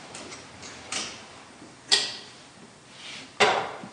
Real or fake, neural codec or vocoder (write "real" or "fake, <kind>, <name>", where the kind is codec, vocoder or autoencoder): fake, vocoder, BigVGAN v2